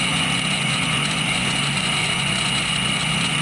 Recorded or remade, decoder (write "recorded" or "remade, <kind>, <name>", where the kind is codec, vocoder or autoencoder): remade, vocoder, Vocos